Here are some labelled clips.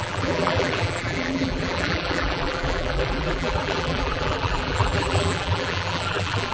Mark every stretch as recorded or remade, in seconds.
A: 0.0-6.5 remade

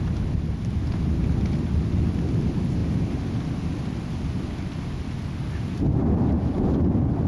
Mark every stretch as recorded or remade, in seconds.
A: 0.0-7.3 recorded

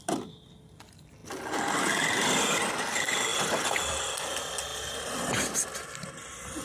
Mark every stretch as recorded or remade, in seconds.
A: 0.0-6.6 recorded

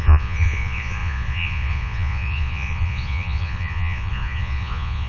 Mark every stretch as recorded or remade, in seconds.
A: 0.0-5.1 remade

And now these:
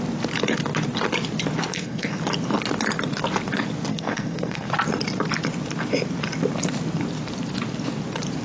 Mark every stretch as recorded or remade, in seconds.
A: 0.0-1.7 recorded; 1.7-2.2 remade; 2.2-3.9 recorded; 3.9-4.7 remade; 4.7-8.4 recorded

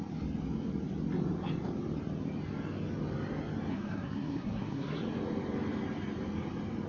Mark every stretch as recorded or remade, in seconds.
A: 0.0-3.7 recorded; 3.7-5.0 remade; 5.0-6.9 recorded

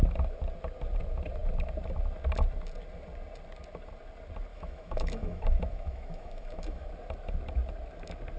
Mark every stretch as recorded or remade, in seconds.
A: 0.0-4.5 recorded; 4.5-6.9 remade; 6.9-8.4 recorded

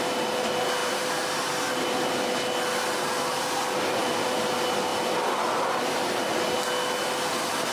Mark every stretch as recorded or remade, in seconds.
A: 0.0-0.8 recorded; 0.8-1.7 remade; 1.7-4.0 recorded; 4.0-4.5 remade; 4.5-7.7 recorded